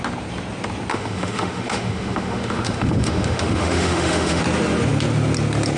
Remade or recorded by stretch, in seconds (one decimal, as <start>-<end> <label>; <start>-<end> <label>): 0.0-0.9 recorded; 0.9-4.4 remade; 4.4-5.8 recorded

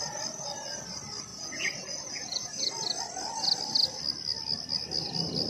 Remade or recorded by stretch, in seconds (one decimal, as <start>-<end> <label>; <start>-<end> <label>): 0.0-1.3 recorded; 1.3-2.7 remade; 2.7-5.5 recorded

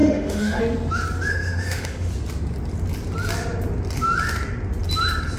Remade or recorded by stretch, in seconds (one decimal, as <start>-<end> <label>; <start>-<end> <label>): 0.0-0.6 remade; 0.6-1.3 recorded; 1.3-2.1 remade; 2.1-5.4 recorded

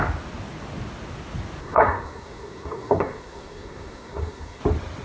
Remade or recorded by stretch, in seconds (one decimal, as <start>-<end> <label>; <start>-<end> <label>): 0.0-1.6 recorded; 1.6-4.6 remade; 4.6-5.0 recorded

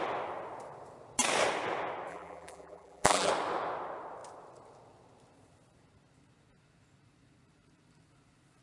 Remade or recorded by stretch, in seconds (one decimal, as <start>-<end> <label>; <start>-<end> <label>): 0.0-2.1 recorded; 2.1-3.3 remade; 3.3-8.6 recorded

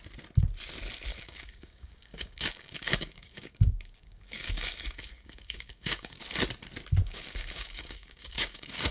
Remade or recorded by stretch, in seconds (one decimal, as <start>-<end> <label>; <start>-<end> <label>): 0.0-1.1 recorded; 1.1-6.2 remade; 6.2-7.0 recorded; 7.0-8.9 remade

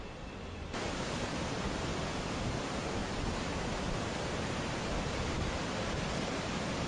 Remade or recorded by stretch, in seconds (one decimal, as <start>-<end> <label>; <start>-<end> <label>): 0.0-1.9 remade; 1.9-2.5 recorded; 2.5-3.0 remade; 3.0-6.3 recorded; 6.3-6.9 remade

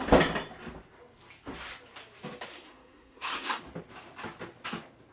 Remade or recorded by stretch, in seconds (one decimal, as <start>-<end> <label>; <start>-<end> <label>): 0.0-2.5 recorded; 2.5-3.6 remade; 3.6-5.1 recorded